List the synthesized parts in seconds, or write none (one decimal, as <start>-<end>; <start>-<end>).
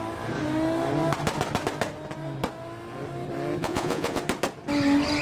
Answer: 3.6-4.2